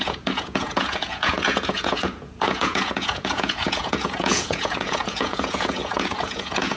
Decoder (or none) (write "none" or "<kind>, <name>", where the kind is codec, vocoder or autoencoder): vocoder, Vocos